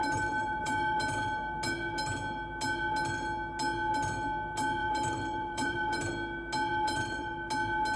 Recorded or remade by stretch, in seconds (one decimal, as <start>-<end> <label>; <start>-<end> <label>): 0.0-1.0 remade; 1.0-4.8 recorded; 4.8-6.1 remade; 6.1-6.7 recorded; 6.7-7.3 remade; 7.3-8.0 recorded